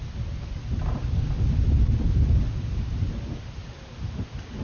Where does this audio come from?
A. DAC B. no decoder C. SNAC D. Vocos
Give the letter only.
B